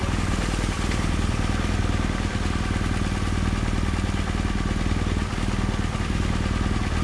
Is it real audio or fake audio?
real